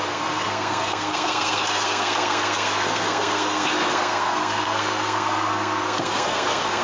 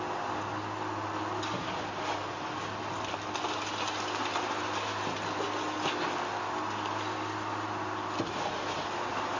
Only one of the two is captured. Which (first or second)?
second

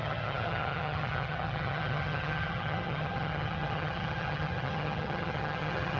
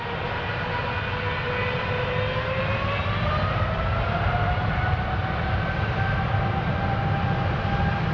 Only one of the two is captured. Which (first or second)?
second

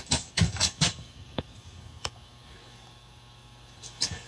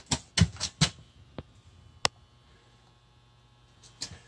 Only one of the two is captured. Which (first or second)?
second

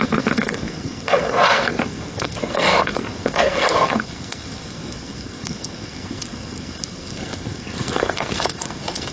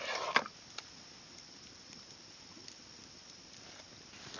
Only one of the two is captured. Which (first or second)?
second